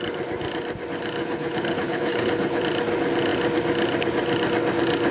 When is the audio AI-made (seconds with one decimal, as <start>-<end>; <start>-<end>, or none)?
1.2-2.6